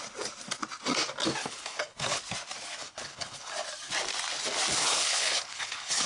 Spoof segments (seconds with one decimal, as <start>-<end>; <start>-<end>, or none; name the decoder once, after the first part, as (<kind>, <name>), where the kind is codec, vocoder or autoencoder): 1.4-2.2 (codec, HILCodec); 2.8-3.5; 4.8-6.1